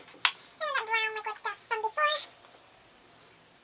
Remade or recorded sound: recorded